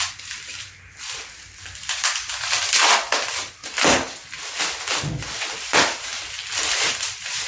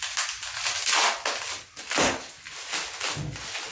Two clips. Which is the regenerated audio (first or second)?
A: first